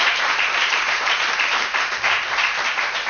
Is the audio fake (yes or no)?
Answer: yes